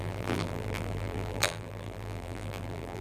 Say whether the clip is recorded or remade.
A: remade